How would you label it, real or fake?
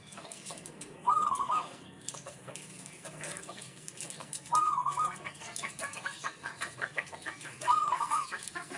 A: fake